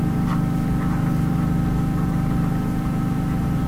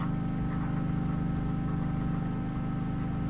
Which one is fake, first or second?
first